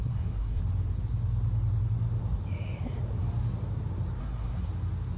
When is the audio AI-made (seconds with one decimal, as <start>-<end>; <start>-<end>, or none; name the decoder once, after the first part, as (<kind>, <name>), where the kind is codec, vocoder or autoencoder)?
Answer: 0.0-0.6 (codec, SNAC); 4.2-4.7